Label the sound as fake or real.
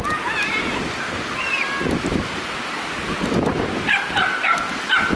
real